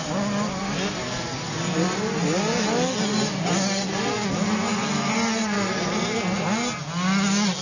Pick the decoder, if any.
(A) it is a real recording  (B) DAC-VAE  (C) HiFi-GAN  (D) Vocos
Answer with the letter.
A